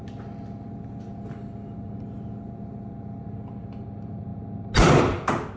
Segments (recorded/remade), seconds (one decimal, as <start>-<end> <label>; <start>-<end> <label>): 0.0-5.6 recorded